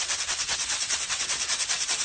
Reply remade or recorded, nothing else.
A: remade